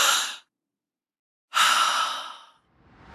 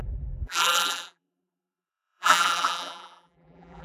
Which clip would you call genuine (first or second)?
first